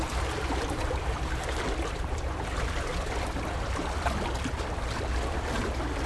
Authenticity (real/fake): fake